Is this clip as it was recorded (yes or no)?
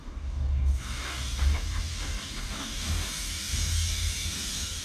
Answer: no